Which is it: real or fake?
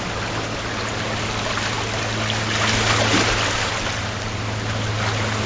real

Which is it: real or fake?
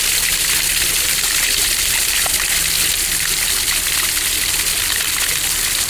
real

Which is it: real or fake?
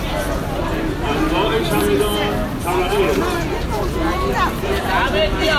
real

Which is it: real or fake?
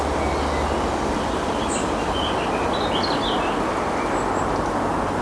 real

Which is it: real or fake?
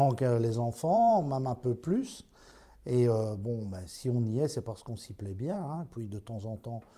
fake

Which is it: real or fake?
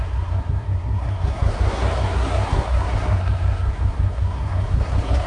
fake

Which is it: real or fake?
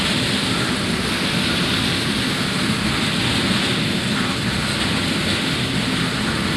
real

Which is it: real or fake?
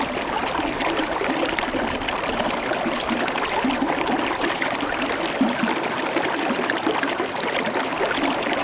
real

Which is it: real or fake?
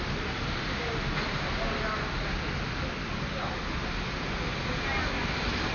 real